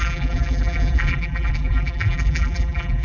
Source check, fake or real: fake